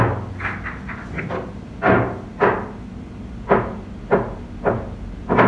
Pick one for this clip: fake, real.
real